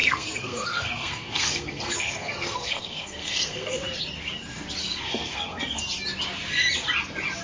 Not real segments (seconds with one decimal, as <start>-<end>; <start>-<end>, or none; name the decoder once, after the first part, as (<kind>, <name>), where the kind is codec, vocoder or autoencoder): 0.0-3.8 (codec, SNAC); 4.8-5.8